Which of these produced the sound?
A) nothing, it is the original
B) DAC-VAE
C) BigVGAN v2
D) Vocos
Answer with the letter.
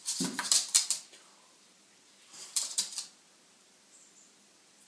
C